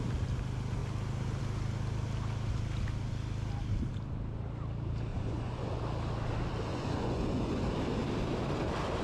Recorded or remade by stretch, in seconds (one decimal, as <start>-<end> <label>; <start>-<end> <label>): 0.0-5.1 recorded; 5.1-5.8 remade; 5.8-6.7 recorded; 6.7-7.6 remade; 7.6-9.0 recorded